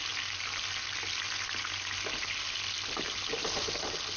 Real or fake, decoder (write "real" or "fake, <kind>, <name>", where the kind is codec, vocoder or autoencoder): real